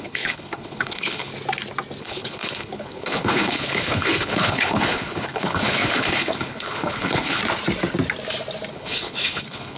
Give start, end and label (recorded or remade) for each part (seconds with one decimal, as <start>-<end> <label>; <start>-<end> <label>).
0.0-1.3 remade; 1.3-2.0 recorded; 2.0-7.4 remade; 7.4-8.7 recorded; 8.7-9.8 remade